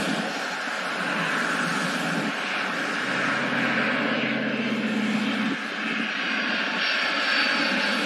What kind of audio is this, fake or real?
real